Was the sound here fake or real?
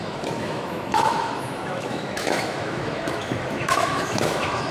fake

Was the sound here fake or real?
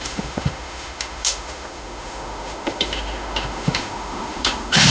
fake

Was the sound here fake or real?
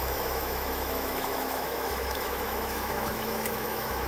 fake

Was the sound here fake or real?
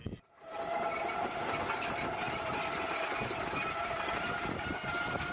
real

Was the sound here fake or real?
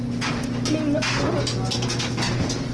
real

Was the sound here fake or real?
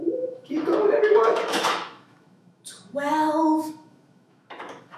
fake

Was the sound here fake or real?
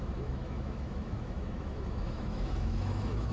fake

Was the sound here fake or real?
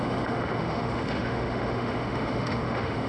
fake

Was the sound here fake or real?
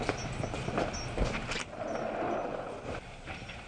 real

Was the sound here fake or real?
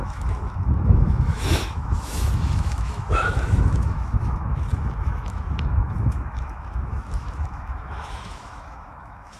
fake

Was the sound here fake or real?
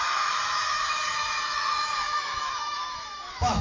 fake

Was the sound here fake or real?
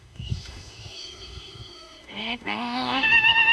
fake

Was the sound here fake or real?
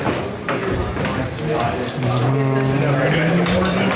real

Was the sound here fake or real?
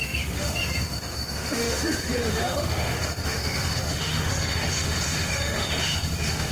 fake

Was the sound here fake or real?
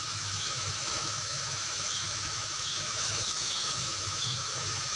fake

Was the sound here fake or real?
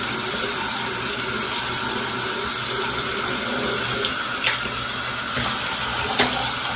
real